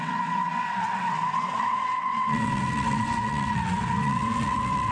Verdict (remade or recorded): remade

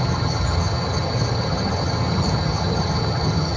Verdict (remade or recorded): remade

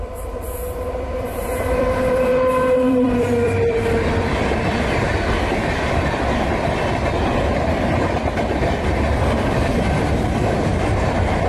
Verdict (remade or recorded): remade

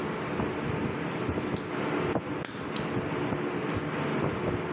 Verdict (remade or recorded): recorded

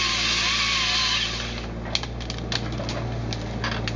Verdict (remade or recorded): recorded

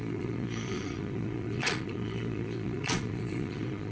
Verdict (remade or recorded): remade